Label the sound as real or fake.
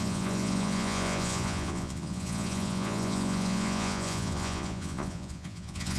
fake